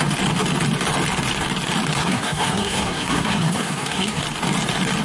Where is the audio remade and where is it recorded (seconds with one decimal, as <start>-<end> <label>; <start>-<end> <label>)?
0.0-2.0 recorded; 2.0-4.2 remade; 4.2-5.0 recorded